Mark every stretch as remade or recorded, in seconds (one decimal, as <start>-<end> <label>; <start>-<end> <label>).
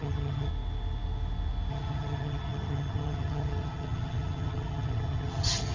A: 0.0-0.5 remade; 0.5-1.7 recorded; 1.7-5.7 remade